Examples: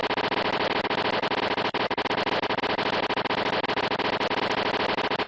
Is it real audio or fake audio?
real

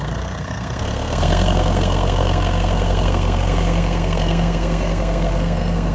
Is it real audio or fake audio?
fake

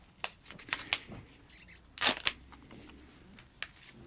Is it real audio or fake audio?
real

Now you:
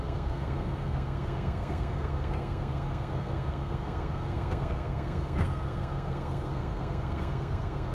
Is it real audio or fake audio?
fake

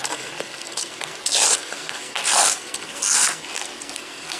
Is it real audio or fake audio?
fake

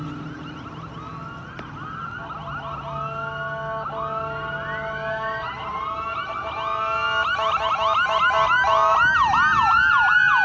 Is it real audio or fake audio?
real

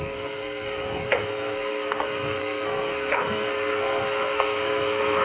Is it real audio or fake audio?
fake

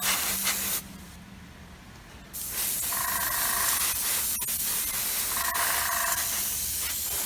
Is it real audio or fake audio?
real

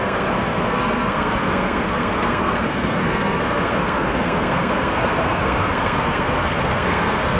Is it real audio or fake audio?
fake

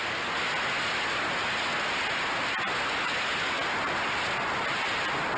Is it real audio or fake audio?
real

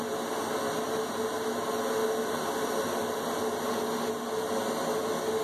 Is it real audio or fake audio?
real